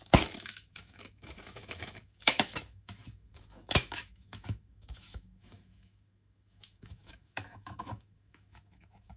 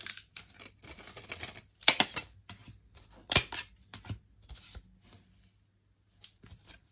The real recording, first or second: second